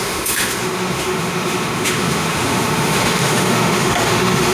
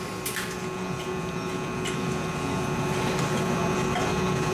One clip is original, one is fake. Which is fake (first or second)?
first